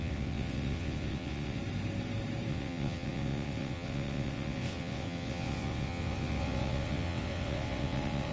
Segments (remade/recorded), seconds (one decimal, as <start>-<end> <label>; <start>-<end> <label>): 0.0-1.6 remade; 1.6-2.5 recorded; 2.5-8.3 remade